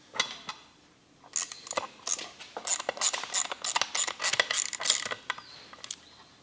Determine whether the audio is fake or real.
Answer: real